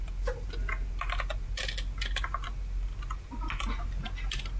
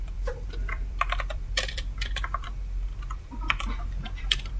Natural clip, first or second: first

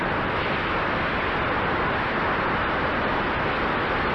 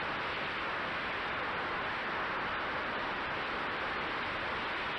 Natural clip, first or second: first